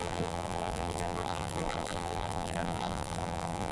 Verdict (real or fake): fake